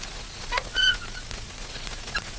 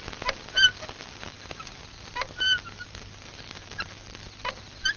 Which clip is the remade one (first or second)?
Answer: first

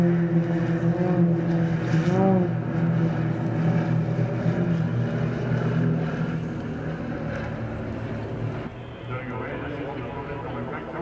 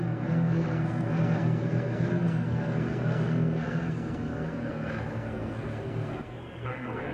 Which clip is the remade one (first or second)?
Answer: second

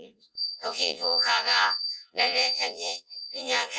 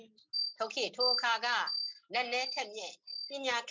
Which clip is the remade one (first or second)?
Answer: first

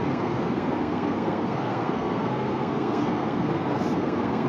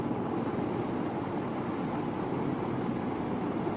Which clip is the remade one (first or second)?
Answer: first